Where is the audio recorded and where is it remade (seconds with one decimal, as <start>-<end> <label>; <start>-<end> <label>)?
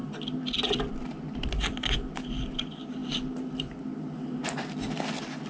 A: 0.0-5.5 recorded